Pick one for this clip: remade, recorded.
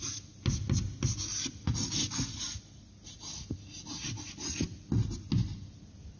recorded